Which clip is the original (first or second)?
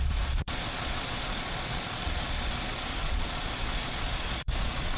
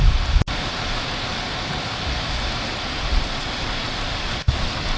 second